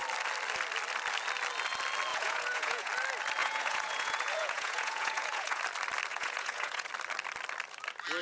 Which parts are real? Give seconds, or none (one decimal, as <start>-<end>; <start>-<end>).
0.0-2.1; 2.9-3.4; 5.6-6.1; 6.9-8.2